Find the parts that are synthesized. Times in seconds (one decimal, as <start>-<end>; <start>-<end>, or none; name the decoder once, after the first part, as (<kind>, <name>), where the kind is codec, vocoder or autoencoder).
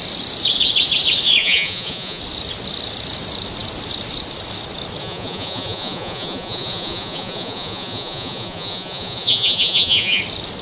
1.4-2.2 (vocoder, Vocos); 5.0-10.2